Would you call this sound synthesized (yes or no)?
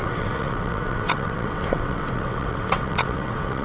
yes